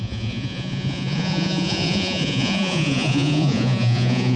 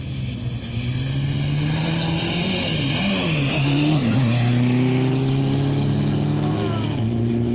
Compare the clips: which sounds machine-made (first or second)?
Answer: first